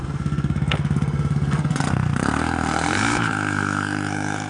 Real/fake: fake